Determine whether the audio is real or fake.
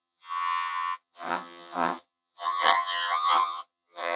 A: fake